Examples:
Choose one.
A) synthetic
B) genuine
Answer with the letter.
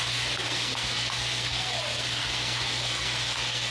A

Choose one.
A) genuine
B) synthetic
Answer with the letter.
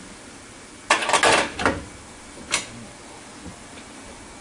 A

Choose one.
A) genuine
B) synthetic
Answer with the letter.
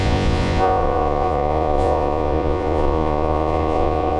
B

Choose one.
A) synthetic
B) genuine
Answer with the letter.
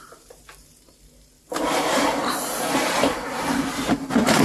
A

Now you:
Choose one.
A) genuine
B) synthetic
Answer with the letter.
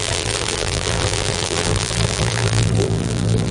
B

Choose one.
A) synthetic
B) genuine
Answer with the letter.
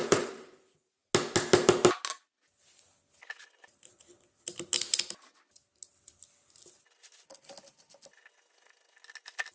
B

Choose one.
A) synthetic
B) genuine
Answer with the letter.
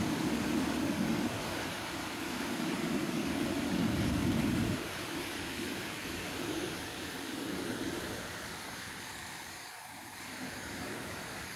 A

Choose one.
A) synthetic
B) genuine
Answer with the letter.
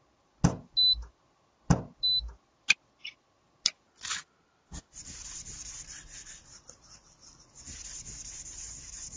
B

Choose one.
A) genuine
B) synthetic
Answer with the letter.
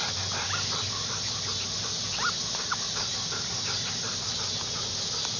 A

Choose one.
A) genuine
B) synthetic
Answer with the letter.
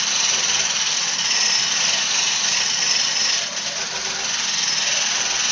A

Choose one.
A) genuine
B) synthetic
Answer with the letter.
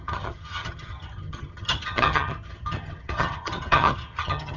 B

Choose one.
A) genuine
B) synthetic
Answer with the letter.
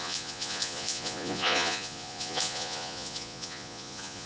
B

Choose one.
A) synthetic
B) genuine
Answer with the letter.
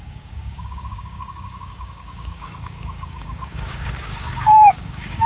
A